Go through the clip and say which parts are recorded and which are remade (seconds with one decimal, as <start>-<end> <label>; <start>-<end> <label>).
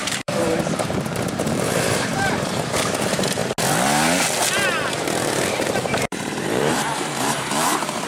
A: 0.0-3.4 remade; 3.4-5.4 recorded; 5.4-8.1 remade